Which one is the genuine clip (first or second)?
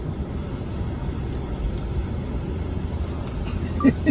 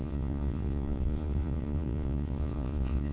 first